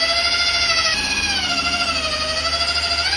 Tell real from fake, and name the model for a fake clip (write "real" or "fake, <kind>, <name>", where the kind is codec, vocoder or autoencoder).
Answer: real